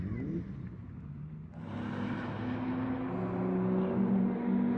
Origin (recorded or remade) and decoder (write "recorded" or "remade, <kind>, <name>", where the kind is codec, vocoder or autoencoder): recorded